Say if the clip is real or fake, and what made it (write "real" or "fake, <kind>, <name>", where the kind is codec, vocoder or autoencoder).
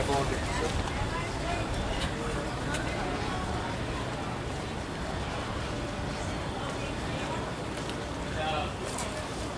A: real